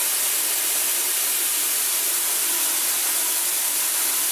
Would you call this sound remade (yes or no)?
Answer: no